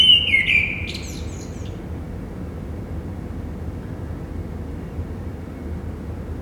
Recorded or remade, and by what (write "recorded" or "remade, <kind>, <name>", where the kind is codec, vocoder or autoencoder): recorded